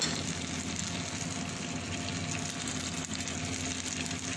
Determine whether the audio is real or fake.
real